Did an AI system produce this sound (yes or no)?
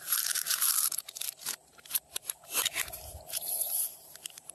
yes